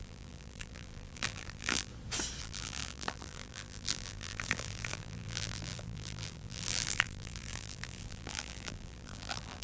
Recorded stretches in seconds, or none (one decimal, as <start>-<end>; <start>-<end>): 1.9-2.4